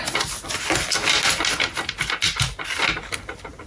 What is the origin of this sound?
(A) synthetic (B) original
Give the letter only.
B